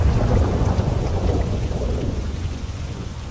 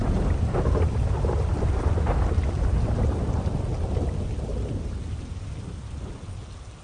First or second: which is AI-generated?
first